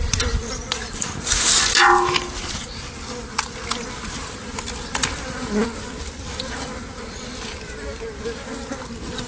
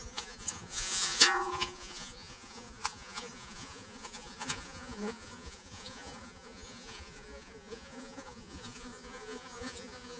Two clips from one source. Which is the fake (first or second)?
second